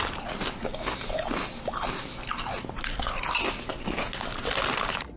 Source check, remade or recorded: recorded